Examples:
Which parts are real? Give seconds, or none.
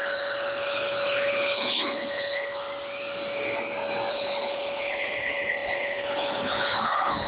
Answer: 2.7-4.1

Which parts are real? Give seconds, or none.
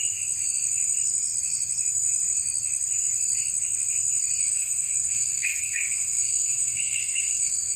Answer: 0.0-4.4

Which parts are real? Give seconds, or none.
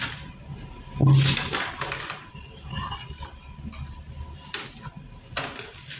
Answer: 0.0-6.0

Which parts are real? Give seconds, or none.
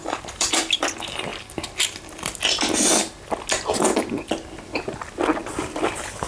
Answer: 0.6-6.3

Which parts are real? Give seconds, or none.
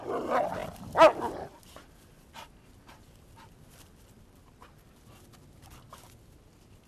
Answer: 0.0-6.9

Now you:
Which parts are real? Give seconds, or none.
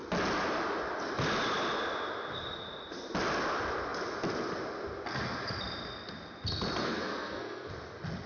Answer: 0.0-6.8; 7.7-8.3